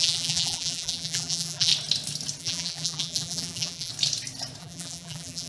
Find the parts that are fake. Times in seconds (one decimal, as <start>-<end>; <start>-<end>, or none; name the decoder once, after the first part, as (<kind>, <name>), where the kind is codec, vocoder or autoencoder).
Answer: 0.0-1.7 (vocoder, BigVGAN v2); 2.4-3.9; 4.6-5.5